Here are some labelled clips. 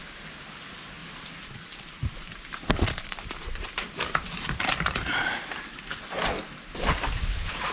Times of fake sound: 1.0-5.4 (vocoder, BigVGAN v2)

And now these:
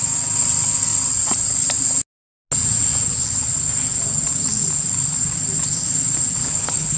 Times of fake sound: 6.4-7.0 (codec, HILCodec)

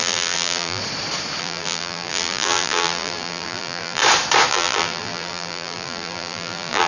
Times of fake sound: 0.0-0.8 (vocoder, BigVGAN v2); 1.4-4.0; 4.5-6.9

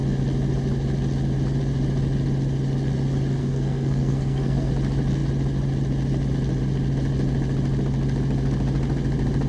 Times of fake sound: 3.4-4.7 (codec, SNAC)

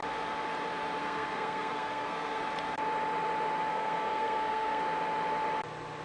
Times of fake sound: 1.0-2.4 (codec, SNAC); 3.7-4.8

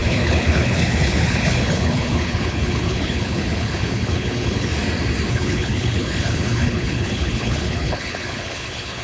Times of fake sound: 0.0-4.7 (codec, HILCodec); 5.3-9.0

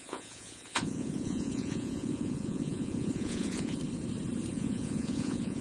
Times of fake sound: 0.0-3.8 (vocoder, Vocos); 4.5-5.6

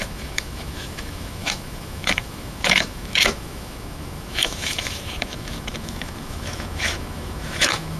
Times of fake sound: 0.0-8.0 (autoencoder, DAC-VAE)